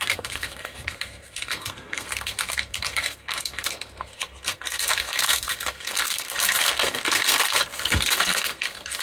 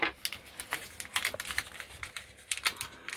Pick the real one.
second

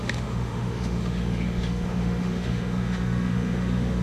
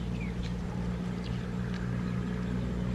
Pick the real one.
second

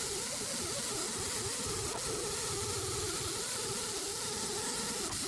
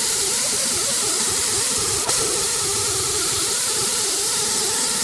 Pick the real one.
first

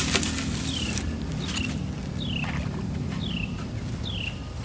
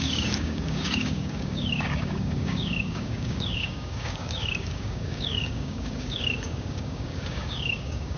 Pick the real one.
first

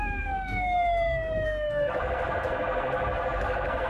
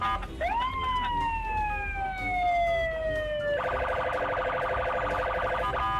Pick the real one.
second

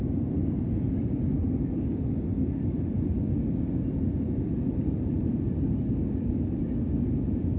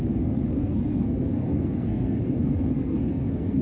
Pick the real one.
first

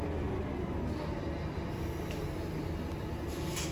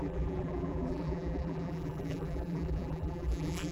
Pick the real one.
first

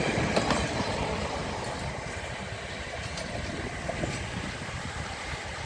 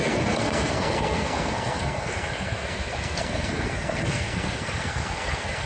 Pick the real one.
first